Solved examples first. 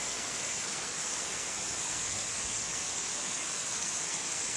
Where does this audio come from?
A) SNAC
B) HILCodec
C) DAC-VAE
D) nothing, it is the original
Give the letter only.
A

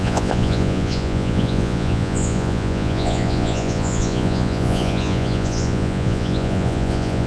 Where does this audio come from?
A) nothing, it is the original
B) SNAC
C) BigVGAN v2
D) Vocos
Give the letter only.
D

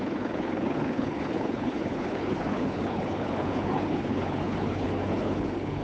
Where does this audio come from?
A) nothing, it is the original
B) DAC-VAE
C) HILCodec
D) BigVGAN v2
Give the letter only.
C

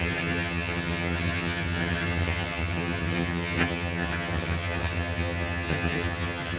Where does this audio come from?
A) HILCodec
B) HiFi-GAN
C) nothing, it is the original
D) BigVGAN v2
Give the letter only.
B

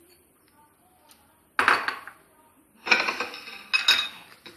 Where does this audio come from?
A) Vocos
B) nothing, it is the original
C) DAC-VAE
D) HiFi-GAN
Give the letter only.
B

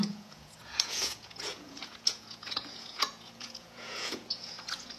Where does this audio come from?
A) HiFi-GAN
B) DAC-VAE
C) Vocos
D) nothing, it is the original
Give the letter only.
C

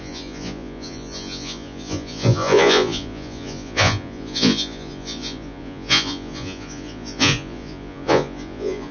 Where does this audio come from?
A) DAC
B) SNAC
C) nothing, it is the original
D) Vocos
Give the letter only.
D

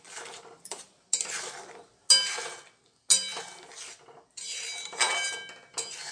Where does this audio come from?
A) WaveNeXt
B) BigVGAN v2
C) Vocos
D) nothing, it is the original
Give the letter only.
D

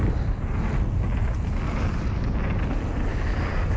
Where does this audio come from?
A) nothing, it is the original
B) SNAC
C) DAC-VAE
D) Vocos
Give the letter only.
A